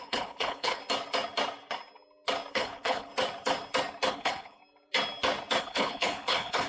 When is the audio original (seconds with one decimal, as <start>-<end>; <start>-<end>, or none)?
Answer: 0.8-2.5; 3.1-4.1; 4.6-5.6